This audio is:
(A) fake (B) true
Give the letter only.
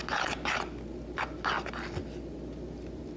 B